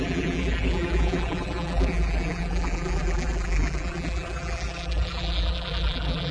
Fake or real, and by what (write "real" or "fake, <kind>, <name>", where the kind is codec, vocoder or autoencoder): fake, vocoder, BigVGAN v2